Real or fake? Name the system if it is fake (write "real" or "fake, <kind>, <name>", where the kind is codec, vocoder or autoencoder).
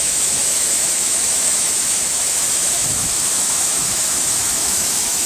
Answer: fake, autoencoder, DAC-VAE